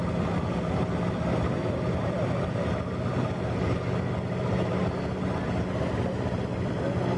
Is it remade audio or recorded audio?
recorded